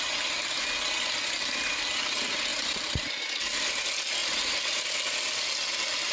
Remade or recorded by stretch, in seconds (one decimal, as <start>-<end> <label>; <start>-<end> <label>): 0.0-2.5 recorded; 2.5-3.2 remade; 3.2-4.2 recorded; 4.2-5.1 remade; 5.1-6.1 recorded